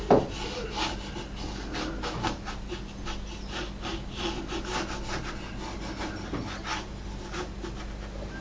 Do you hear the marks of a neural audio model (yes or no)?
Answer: no